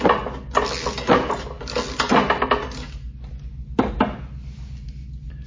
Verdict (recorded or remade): recorded